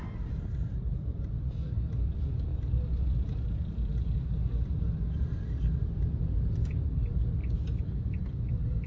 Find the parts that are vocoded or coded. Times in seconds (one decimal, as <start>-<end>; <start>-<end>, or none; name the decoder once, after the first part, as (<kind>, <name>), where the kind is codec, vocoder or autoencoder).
2.5-3.0 (vocoder, BigVGAN v2); 7.4-8.9